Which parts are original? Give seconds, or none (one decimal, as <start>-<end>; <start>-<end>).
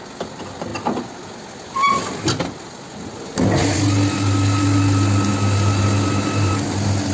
0.0-7.1